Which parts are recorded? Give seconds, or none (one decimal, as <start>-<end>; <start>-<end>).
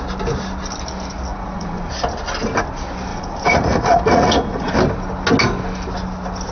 0.0-1.3; 1.9-3.1; 4.7-6.5